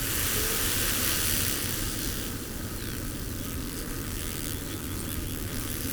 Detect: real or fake real